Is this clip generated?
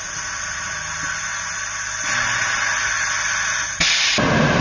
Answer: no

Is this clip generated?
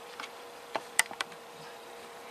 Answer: yes